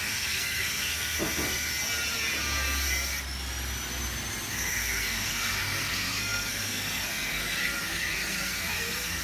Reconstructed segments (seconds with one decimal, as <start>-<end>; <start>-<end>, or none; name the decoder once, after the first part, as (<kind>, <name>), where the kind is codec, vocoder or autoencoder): 0.0-1.7 (codec, SNAC); 4.5-9.2